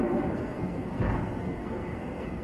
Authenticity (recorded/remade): remade